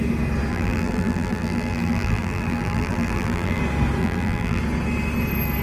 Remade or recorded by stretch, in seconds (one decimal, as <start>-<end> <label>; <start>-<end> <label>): 0.0-0.5 recorded; 0.5-3.6 remade; 3.6-4.0 recorded; 4.0-4.6 remade; 4.6-5.6 recorded